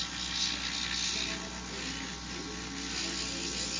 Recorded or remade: recorded